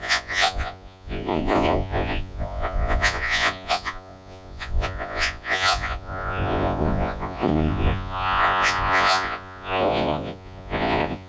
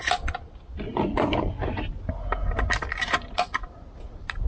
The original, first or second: second